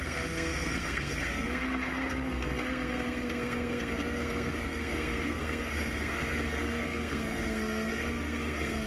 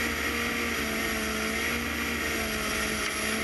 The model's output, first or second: first